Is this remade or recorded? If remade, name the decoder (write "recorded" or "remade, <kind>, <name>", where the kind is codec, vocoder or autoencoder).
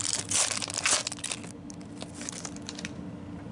recorded